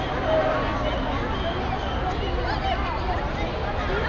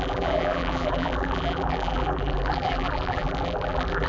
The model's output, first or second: second